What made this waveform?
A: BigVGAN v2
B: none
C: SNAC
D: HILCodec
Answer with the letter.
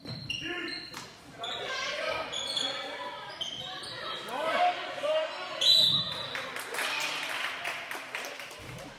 B